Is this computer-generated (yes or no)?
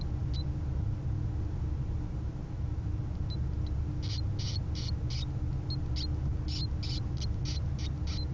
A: no